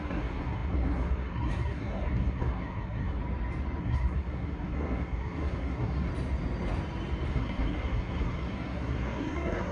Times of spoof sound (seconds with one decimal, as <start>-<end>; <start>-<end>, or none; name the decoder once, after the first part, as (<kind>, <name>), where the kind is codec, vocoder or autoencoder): 0.0-3.2 (codec, SNAC); 3.8-6.1; 7.3-9.7